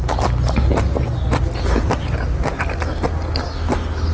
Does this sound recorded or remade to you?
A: recorded